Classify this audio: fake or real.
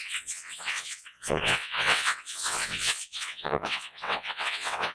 fake